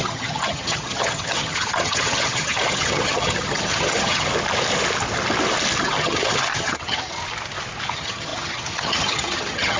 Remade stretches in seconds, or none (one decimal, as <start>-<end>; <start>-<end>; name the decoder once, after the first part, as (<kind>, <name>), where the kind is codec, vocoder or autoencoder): 0.0-4.3 (vocoder, HiFi-GAN); 5.8-7.2; 7.8-9.8